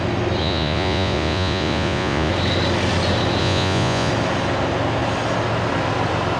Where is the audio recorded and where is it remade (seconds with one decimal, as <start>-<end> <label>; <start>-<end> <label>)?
0.0-0.4 recorded; 0.4-2.3 remade; 2.3-3.4 recorded; 3.4-4.1 remade; 4.1-6.4 recorded

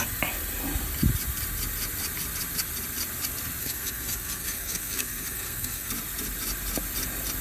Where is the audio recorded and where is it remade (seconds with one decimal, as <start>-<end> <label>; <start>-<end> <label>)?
0.0-3.6 recorded; 3.6-5.9 remade; 5.9-7.4 recorded

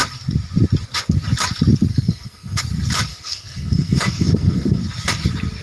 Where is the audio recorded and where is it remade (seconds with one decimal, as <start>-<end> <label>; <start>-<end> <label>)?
0.0-1.9 recorded; 1.9-2.6 remade; 2.6-3.1 recorded; 3.1-4.8 remade; 4.8-5.6 recorded

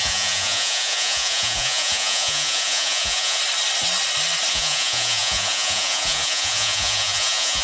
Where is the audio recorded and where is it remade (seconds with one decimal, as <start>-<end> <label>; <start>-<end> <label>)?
0.0-3.4 remade; 3.4-4.5 recorded; 4.5-7.6 remade